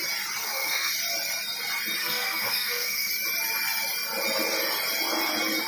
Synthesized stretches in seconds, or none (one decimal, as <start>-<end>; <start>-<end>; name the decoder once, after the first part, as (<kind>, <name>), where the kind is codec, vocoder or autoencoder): 0.4-0.9 (codec, SNAC); 2.0-3.1